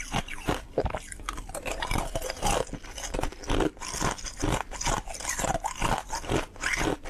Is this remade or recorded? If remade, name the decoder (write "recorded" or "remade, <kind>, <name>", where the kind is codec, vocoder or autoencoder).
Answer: remade, vocoder, BigVGAN v2